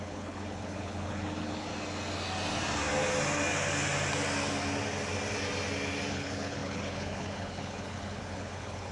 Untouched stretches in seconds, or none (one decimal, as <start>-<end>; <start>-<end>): 1.7-6.1